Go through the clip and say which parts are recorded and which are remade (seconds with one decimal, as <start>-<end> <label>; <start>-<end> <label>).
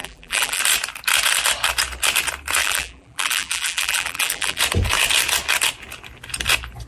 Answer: 0.0-0.6 remade; 0.6-2.6 recorded; 2.6-4.6 remade; 4.6-6.9 recorded